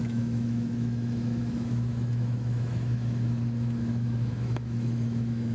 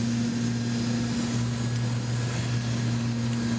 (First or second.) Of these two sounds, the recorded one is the second